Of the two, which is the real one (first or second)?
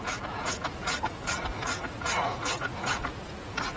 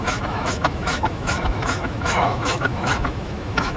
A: first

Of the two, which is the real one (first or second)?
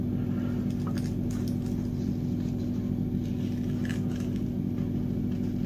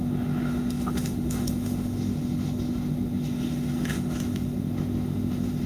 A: first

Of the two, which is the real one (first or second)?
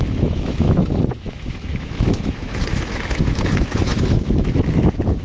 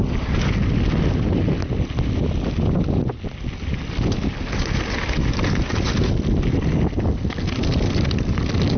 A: second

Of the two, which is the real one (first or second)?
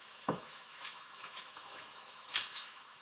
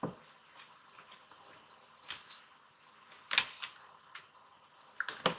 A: second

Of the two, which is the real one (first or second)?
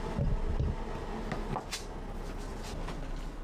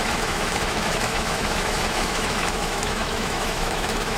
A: first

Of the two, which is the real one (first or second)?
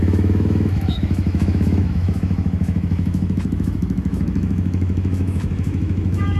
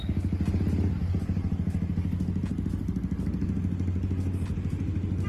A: second